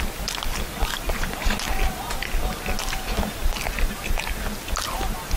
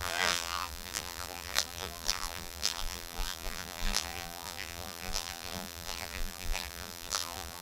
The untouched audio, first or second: first